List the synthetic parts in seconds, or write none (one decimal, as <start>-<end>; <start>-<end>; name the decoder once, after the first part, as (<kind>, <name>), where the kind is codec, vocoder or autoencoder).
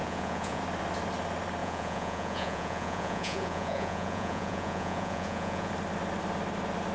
0.0-0.6 (vocoder, Vocos); 1.6-5.7